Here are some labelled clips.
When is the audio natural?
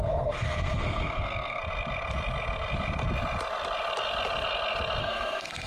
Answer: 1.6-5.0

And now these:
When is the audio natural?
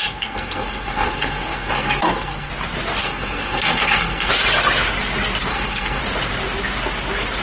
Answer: 2.5-3.0; 4.3-5.5; 6.0-7.4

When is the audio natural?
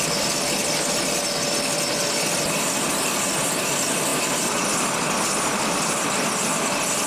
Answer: 0.0-7.1